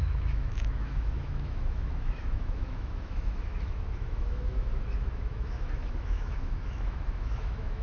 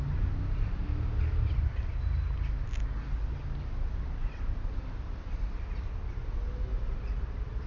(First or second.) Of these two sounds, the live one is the second